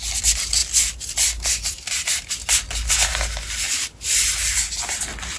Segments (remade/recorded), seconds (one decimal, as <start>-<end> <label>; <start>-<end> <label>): 0.0-5.4 recorded